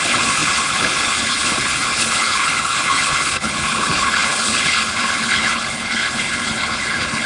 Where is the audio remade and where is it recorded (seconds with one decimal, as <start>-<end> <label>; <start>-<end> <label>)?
0.0-7.3 remade